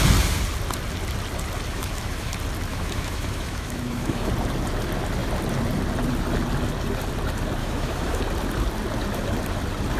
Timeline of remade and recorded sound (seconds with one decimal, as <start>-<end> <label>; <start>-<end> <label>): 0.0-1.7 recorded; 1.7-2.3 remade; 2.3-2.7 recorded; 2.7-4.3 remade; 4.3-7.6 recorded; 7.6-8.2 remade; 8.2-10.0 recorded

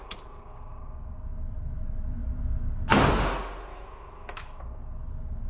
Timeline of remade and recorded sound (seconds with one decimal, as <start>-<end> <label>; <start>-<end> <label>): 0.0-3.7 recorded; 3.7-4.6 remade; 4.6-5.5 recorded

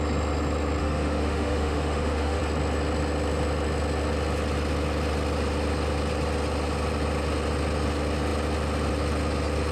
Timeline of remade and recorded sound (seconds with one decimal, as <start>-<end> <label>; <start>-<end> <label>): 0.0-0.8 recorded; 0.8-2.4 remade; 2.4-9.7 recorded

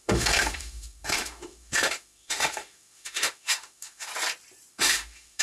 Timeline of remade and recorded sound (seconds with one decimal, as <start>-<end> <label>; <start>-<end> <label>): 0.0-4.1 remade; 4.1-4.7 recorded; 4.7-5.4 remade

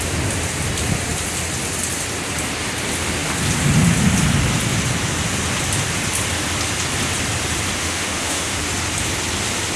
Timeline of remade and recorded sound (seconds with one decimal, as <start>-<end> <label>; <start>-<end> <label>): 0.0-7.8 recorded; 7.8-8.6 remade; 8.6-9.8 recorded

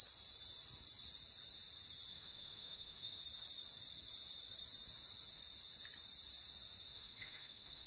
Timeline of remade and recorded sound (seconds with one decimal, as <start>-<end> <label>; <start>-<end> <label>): 0.0-2.1 recorded; 2.1-3.2 remade; 3.2-6.9 recorded; 6.9-7.9 remade

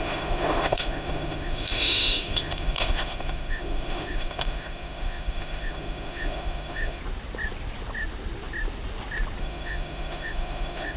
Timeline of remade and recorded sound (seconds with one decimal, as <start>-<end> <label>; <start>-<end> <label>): 0.0-7.0 remade; 7.0-9.4 recorded; 9.4-11.0 remade

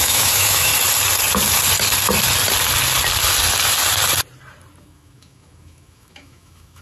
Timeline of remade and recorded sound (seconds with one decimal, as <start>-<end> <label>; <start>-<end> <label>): 0.0-0.7 remade; 0.7-4.8 recorded; 4.8-6.8 remade